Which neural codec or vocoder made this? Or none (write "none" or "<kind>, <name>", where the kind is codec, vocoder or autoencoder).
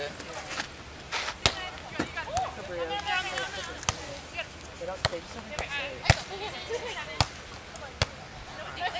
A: none